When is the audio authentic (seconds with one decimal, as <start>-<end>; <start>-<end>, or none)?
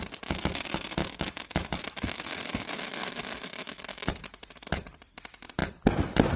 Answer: 0.0-1.0; 4.1-6.4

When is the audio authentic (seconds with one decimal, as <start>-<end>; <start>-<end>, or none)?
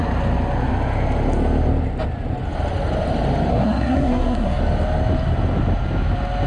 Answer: 0.0-3.5; 4.6-6.5